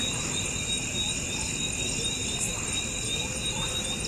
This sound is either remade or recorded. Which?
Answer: recorded